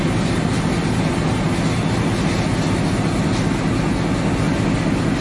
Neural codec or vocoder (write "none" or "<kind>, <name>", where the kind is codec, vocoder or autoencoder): none